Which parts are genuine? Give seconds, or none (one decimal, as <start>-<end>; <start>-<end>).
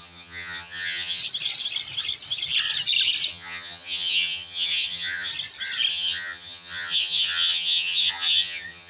1.2-3.3; 5.3-5.9